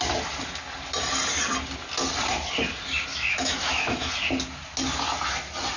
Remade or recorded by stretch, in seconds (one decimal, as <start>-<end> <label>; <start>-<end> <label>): 0.0-3.1 recorded; 3.1-4.1 remade; 4.1-5.8 recorded